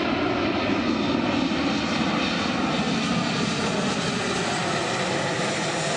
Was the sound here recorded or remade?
recorded